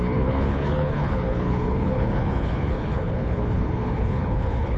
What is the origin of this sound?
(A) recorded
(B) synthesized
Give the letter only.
B